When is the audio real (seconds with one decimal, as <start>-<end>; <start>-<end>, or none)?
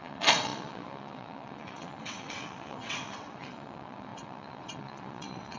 none